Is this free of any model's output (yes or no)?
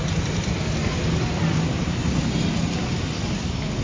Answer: yes